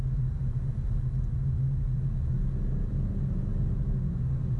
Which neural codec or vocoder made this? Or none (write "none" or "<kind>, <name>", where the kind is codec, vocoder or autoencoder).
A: none